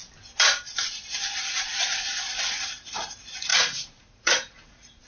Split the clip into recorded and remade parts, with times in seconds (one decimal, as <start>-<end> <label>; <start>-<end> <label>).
0.0-2.4 recorded; 2.4-5.1 remade